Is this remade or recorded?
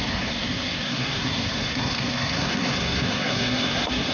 remade